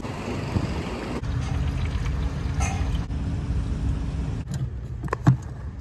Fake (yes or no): no